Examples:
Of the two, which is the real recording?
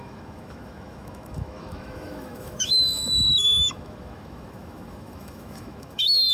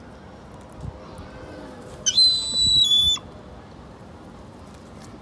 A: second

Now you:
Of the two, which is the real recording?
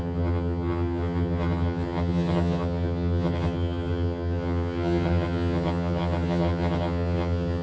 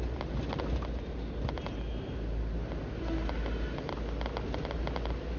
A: second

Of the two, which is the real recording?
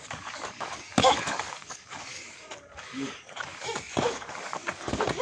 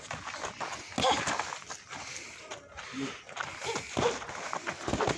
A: second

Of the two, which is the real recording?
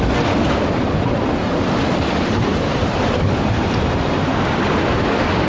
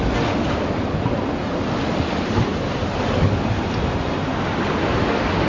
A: second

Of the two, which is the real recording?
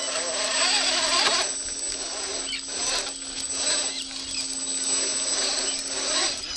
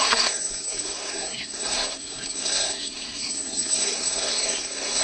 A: first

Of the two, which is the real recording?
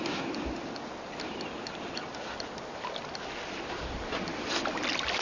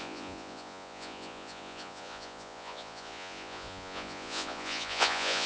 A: first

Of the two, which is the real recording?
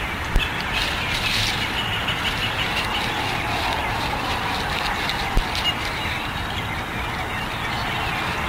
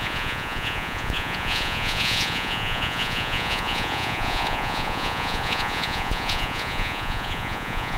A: first